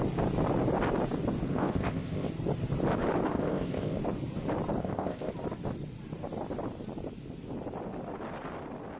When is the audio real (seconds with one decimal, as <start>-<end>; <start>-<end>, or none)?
0.0-1.5; 2.3-3.3; 4.0-4.8; 5.3-9.0